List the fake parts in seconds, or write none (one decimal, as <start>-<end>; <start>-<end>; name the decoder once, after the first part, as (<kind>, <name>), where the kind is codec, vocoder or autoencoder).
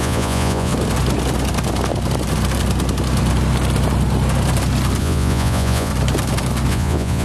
0.0-0.7 (vocoder, Vocos); 5.0-5.9; 6.7-7.2